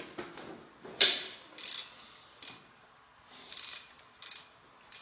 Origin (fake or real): real